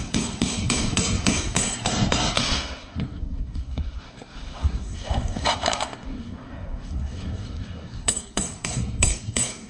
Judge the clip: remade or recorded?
remade